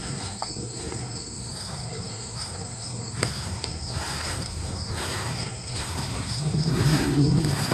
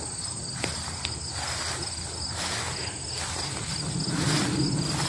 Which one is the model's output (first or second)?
first